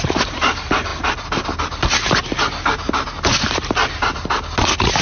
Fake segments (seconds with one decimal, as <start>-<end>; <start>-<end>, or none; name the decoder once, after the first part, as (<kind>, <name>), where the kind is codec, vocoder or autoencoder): none